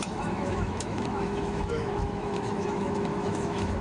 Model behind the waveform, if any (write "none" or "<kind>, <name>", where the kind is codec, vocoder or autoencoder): autoencoder, DAC-VAE